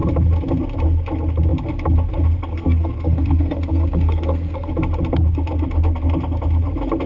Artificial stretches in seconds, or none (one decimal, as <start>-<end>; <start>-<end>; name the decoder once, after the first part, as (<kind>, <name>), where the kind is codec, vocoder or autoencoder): 2.5-4.7 (codec, SNAC)